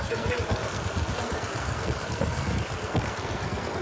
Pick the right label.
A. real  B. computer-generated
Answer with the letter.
B